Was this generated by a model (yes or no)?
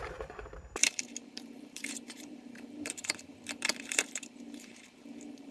yes